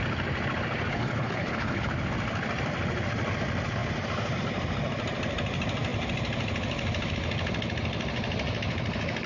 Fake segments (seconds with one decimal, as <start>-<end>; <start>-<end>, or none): 0.9-1.9